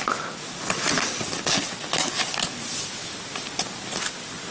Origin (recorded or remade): recorded